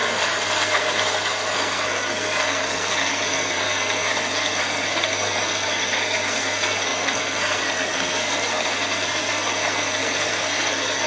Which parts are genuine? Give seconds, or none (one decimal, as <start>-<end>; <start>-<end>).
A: none